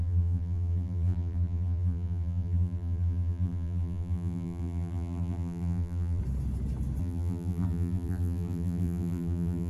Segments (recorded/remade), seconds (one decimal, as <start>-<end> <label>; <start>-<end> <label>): 0.0-6.2 remade; 6.2-7.0 recorded; 7.0-9.7 remade